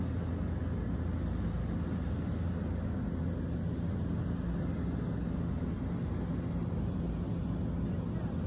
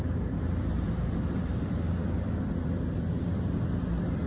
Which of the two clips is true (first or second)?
first